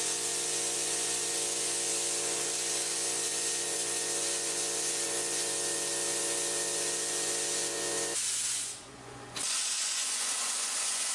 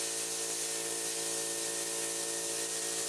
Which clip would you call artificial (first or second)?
first